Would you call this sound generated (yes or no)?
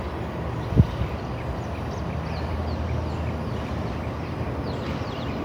no